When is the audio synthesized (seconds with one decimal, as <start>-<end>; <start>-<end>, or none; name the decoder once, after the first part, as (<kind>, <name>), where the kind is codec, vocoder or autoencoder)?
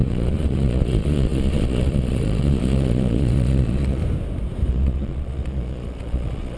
0.0-4.0 (vocoder, Vocos); 4.7-6.6